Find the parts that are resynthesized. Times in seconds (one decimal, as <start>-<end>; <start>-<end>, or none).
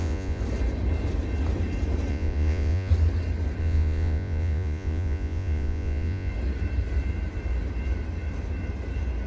0.0-0.4; 2.1-2.9; 3.6-6.3